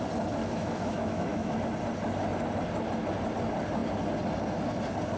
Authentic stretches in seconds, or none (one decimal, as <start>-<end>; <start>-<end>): 0.0-0.4; 1.6-5.2